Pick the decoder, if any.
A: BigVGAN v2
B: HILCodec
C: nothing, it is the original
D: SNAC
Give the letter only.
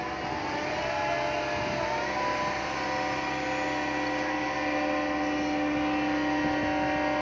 C